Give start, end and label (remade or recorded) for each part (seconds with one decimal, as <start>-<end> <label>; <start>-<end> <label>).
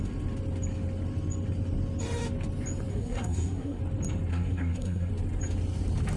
0.0-2.9 recorded; 2.9-3.8 remade; 3.8-4.3 recorded; 4.3-5.1 remade; 5.1-6.2 recorded